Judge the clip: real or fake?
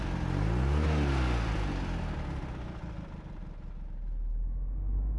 real